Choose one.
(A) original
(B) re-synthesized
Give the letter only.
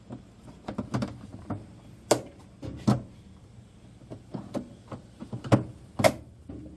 A